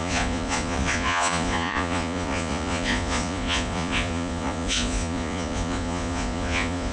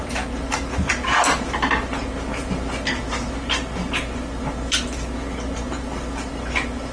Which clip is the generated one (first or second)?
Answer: first